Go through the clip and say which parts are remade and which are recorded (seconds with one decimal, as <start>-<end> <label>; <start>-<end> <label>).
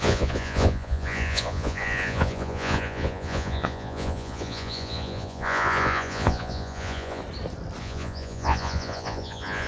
0.0-7.2 remade; 7.2-7.8 recorded; 7.8-9.7 remade